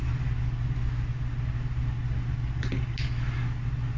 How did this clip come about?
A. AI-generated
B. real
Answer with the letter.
B